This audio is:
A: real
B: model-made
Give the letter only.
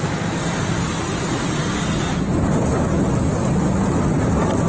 A